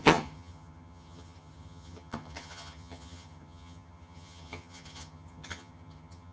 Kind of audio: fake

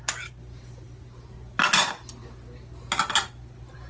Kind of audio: real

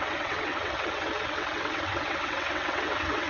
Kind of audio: fake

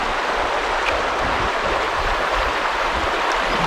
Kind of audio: fake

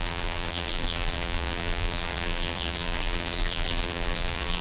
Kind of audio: fake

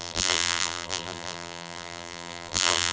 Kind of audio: fake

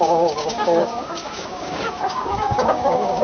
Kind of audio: fake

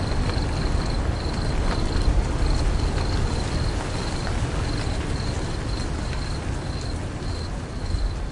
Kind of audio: real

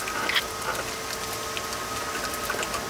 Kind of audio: real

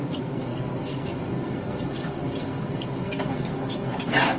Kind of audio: fake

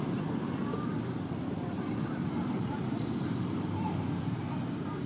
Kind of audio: real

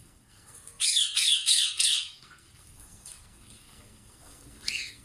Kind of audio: fake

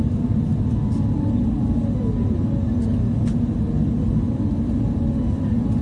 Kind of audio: real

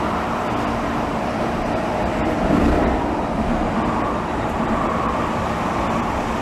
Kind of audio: fake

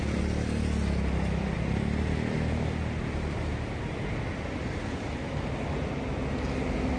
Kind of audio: real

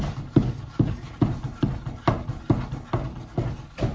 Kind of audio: real